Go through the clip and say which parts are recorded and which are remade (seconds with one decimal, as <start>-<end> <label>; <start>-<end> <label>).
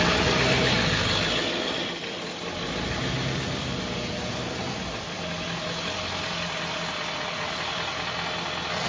0.0-8.9 recorded